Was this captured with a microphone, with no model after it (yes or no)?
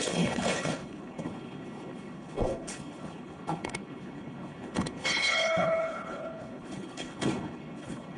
no